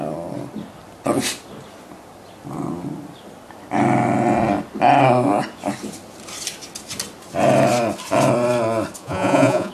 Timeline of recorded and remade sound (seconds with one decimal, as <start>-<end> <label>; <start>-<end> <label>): 0.0-9.0 recorded; 9.0-9.7 remade